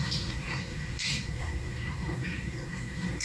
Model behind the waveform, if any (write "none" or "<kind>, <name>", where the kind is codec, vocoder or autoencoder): codec, SNAC